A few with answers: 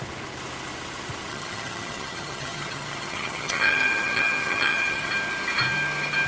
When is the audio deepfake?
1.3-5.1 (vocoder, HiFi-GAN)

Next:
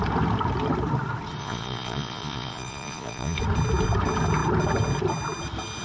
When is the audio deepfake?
1.4-3.4 (vocoder, Vocos)

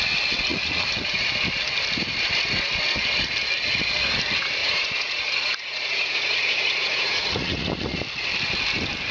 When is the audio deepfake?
0.5-1.3 (vocoder, Vocos); 4.6-8.0

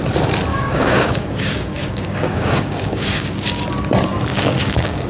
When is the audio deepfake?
0.5-3.6 (codec, DAC); 4.3-5.1

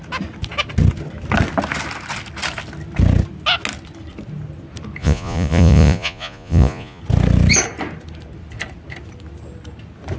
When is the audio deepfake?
5.0-7.0 (vocoder, Vocos)

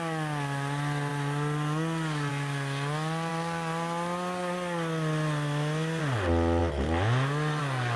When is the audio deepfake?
none

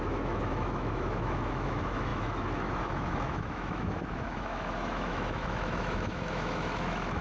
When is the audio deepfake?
0.0-7.2 (autoencoder, DAC-VAE)

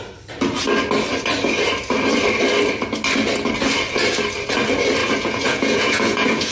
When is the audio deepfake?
5.0-6.5 (vocoder, Vocos)